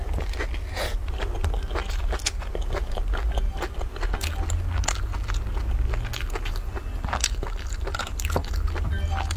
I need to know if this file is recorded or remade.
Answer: recorded